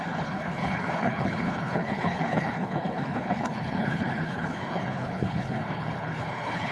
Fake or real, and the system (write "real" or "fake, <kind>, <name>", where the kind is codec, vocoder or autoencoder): fake, codec, HILCodec